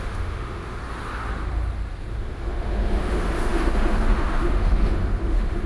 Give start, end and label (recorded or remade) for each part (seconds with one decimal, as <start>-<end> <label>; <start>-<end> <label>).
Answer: 0.0-0.8 remade; 0.8-2.1 recorded; 2.1-5.7 remade